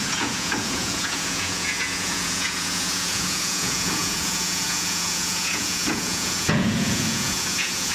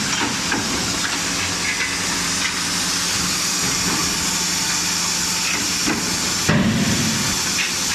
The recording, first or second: second